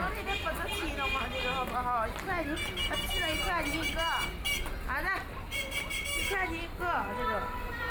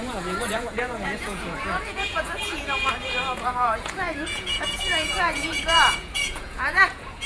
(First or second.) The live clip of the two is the first